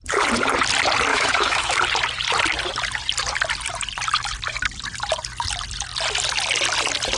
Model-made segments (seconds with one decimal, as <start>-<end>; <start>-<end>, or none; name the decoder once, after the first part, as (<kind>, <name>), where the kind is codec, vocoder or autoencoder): 1.1-1.8 (autoencoder, DAC-VAE)